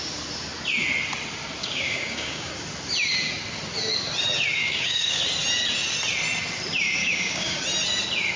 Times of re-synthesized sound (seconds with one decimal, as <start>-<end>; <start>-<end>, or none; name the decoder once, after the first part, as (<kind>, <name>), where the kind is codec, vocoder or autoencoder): 1.6-2.5 (codec, DAC); 4.6-5.2; 7.0-7.6